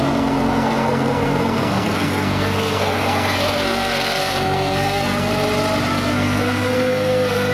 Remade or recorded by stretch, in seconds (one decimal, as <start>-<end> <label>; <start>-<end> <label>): 0.0-5.3 remade; 5.3-5.9 recorded; 5.9-7.5 remade